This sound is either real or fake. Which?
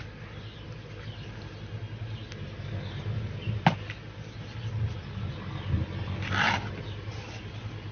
real